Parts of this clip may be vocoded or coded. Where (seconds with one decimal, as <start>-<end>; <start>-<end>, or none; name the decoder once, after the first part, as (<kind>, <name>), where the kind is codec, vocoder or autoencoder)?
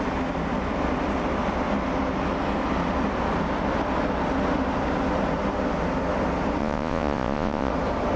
6.6-7.7 (vocoder, Vocos)